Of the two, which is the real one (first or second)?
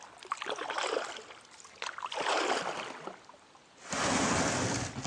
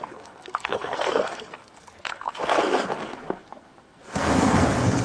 first